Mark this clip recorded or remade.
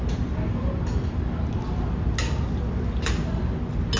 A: recorded